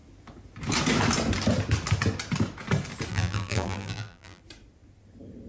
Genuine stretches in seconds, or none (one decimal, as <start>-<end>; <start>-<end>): 0.0-3.1; 4.4-5.5